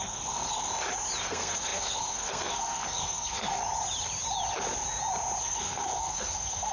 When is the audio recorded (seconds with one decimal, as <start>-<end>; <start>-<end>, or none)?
0.7-1.2; 3.6-5.4